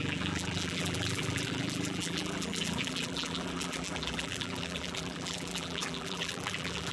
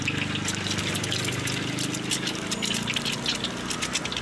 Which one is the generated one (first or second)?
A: first